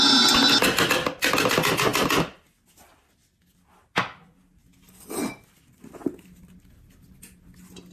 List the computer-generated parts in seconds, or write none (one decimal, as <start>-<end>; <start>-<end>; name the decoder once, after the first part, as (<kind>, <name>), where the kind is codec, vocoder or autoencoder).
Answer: none